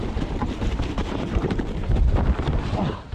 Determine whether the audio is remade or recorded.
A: remade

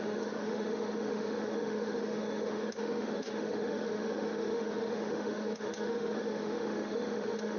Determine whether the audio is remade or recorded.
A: remade